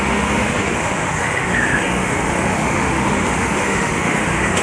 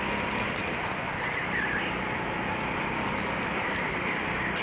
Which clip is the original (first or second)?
second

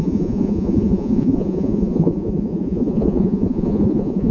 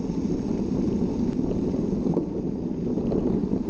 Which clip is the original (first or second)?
second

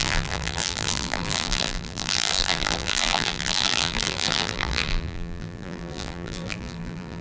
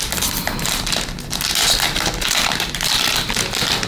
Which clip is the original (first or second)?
second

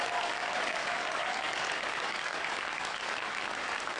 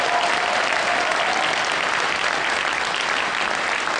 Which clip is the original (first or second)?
second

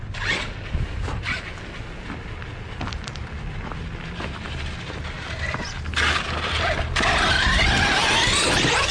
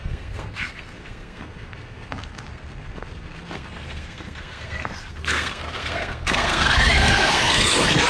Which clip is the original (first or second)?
first